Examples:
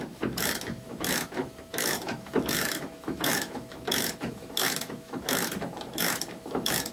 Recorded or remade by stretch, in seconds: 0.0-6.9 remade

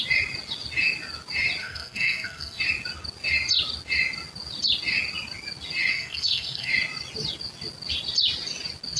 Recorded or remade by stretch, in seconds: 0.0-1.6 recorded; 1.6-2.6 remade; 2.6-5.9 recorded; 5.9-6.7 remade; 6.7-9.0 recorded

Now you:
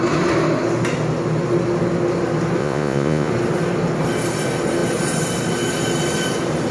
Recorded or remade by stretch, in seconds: 0.0-2.6 recorded; 2.6-3.3 remade; 3.3-6.7 recorded

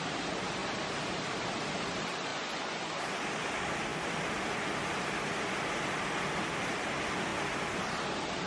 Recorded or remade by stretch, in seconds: 0.0-2.3 recorded; 2.3-3.0 remade; 3.0-8.5 recorded

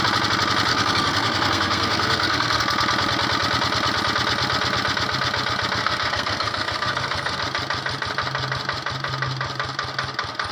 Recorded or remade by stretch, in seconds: 0.0-0.7 recorded; 0.7-2.6 remade; 2.6-5.8 recorded; 5.8-7.4 remade; 7.4-10.5 recorded

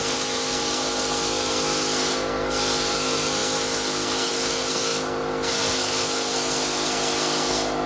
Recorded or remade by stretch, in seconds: 0.0-7.9 remade

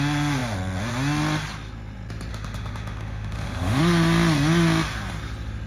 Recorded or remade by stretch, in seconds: 0.0-2.3 recorded; 2.3-3.8 remade; 3.8-5.7 recorded

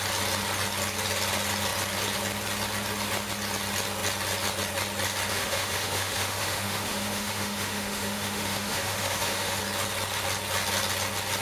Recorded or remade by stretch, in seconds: 0.0-5.3 recorded; 5.3-9.6 remade; 9.6-11.4 recorded